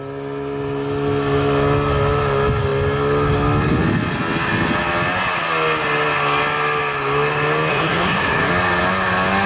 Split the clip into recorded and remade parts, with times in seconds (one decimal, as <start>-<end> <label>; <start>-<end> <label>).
0.0-7.7 recorded; 7.7-8.5 remade; 8.5-9.5 recorded